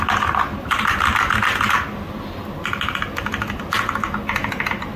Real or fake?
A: real